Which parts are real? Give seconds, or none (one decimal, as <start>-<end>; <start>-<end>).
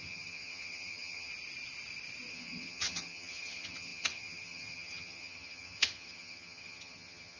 1.3-2.3